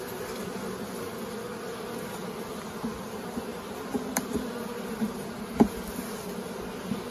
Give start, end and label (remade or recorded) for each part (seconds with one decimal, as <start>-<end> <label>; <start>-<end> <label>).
0.0-3.5 recorded; 3.5-5.4 remade; 5.4-7.1 recorded